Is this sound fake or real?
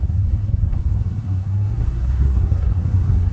fake